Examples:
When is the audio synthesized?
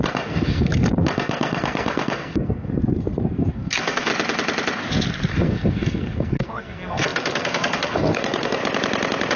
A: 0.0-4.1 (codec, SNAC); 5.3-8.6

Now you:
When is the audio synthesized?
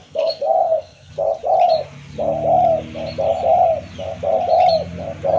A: 0.0-1.1 (codec, SNAC)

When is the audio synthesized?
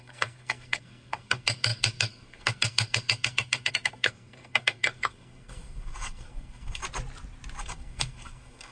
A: 0.0-6.8 (codec, SNAC); 7.6-8.7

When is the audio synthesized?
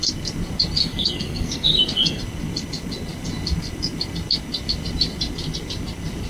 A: 0.8-2.2 (codec, SNAC)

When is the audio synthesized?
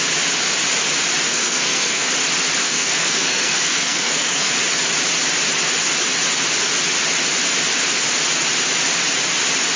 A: 1.3-2.1 (codec, SNAC); 2.6-4.5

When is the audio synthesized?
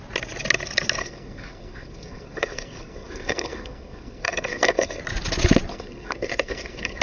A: 1.0-5.0 (codec, SNAC); 5.7-7.0